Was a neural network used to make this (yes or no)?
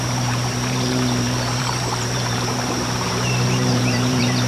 yes